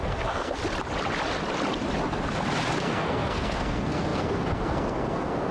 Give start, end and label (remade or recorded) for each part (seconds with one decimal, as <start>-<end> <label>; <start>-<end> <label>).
0.0-0.6 remade; 0.6-2.8 recorded; 2.8-5.5 remade